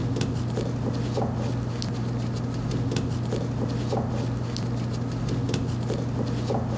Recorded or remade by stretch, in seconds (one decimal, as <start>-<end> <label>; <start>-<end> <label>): 0.0-6.8 recorded